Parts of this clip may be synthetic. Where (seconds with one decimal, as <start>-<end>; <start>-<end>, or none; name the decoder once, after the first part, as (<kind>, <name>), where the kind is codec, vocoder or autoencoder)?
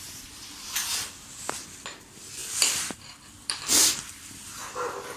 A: 0.0-5.2 (vocoder, BigVGAN v2)